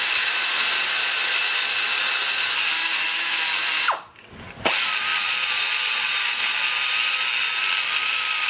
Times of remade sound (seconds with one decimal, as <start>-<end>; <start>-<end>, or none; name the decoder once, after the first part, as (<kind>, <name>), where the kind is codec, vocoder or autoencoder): none